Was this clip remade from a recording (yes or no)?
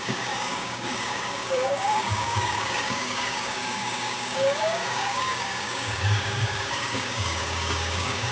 yes